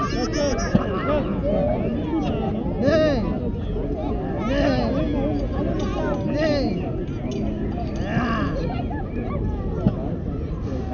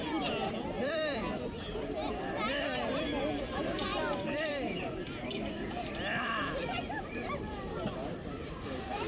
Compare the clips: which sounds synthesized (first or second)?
second